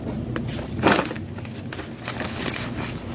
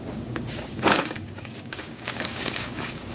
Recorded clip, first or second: first